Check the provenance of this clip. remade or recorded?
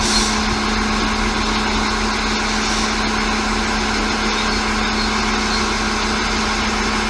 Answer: recorded